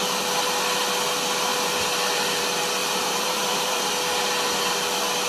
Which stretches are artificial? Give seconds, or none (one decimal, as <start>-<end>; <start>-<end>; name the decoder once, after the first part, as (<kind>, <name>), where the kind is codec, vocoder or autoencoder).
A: 2.8-3.9 (vocoder, BigVGAN v2)